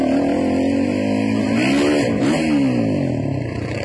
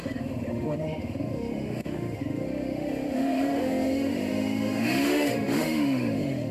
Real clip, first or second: first